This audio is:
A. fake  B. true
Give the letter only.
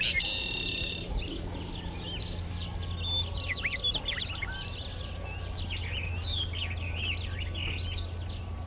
B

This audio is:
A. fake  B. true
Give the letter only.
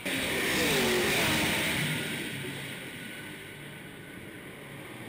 B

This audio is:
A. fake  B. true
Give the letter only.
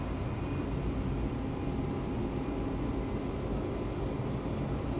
B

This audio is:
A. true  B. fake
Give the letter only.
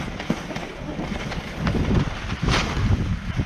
B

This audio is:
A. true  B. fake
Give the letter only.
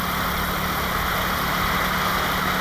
A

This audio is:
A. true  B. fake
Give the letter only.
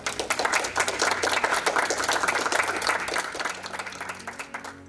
A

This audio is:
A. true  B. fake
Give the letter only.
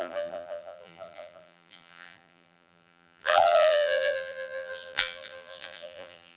B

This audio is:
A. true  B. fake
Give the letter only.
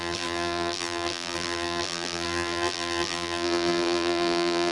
B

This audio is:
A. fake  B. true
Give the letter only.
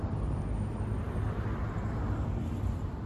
A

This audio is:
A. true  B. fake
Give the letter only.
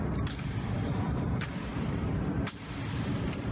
B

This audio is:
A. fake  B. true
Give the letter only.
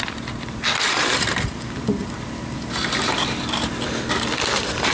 A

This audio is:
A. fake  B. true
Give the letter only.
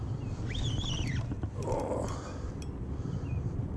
B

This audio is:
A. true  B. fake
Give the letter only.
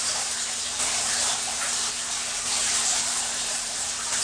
B